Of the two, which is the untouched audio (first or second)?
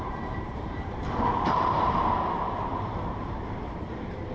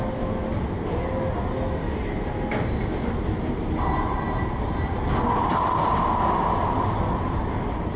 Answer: second